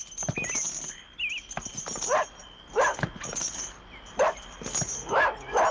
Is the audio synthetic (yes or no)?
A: no